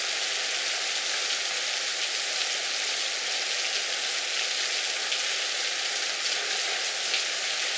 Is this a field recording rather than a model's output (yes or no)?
yes